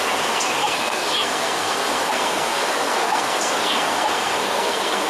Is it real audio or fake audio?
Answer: fake